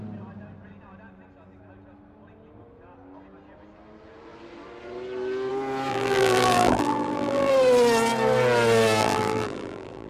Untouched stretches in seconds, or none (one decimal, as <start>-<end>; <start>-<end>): 0.0-5.9; 7.5-9.0